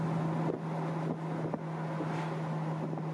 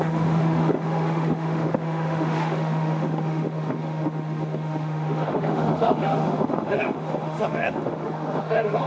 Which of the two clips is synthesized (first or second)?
second